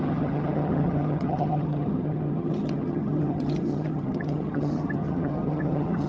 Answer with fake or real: fake